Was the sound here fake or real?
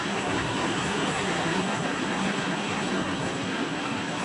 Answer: fake